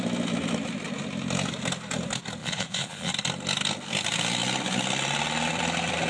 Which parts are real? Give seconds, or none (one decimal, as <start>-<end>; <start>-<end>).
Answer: 0.0-2.4; 3.1-6.1